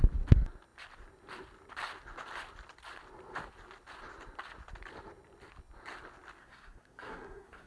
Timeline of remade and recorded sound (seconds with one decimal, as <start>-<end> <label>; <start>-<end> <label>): 0.0-6.4 recorded; 6.4-7.7 remade